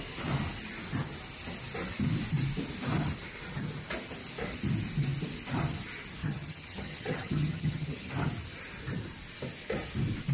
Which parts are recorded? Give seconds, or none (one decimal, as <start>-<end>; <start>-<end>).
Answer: 0.0-6.2; 8.1-10.3